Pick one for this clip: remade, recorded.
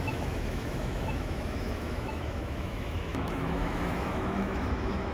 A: remade